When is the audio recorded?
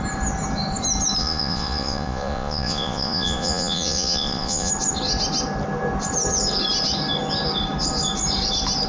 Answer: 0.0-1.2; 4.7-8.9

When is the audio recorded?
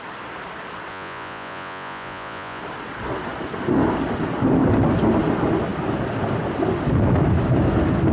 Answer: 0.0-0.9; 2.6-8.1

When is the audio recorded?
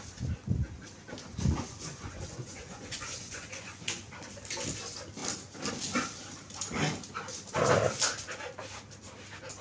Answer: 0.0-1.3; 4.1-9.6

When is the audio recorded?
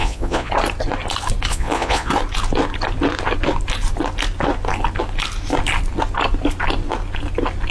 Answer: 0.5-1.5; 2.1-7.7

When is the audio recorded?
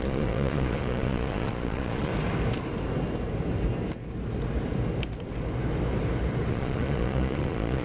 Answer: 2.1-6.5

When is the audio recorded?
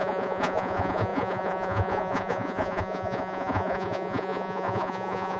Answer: none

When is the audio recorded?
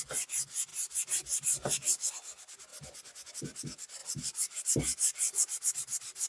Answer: 0.0-2.7; 3.3-6.3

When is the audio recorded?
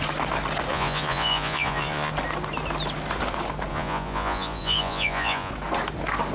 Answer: 0.0-0.7; 2.1-3.7; 5.5-6.3